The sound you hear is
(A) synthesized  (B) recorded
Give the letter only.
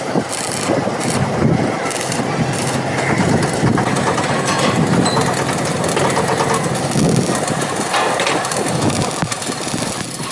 B